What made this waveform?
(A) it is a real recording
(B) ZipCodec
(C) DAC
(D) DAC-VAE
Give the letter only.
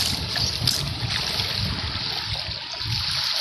A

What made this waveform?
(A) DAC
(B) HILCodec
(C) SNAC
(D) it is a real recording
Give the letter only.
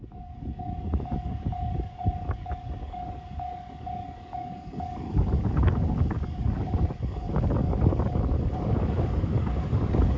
A